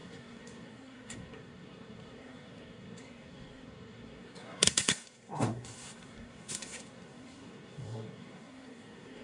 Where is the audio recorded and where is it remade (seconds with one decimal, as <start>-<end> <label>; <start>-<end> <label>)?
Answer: 0.0-9.2 remade